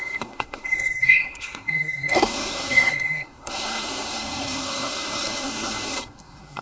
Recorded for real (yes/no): no